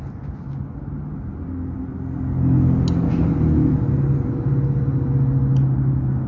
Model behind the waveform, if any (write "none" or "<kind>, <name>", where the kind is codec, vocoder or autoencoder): none